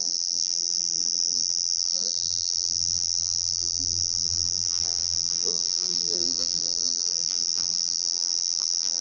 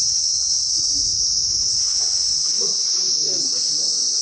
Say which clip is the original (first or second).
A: second